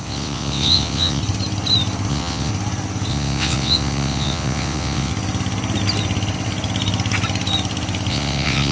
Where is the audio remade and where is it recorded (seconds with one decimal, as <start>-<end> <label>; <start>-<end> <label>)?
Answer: 0.0-1.2 remade; 1.2-2.1 recorded; 2.1-2.5 remade; 2.5-3.1 recorded; 3.1-5.1 remade; 5.1-8.1 recorded; 8.1-8.7 remade